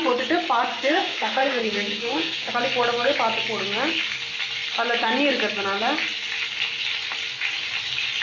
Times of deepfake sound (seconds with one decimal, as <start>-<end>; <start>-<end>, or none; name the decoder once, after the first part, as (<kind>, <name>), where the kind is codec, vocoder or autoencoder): 0.7-2.5 (codec, SNAC)